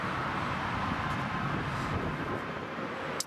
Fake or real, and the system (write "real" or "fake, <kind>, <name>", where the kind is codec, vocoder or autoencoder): real